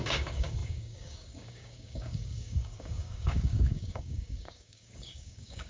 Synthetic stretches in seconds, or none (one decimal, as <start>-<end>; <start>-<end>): 0.0-5.7